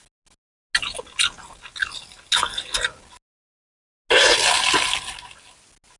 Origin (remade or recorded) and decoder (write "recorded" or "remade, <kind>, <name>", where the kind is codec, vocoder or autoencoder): recorded